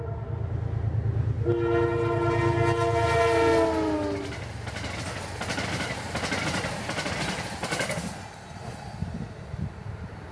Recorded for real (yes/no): yes